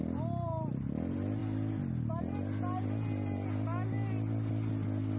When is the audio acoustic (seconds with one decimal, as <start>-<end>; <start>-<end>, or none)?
0.0-5.2